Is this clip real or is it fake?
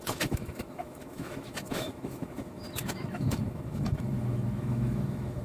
fake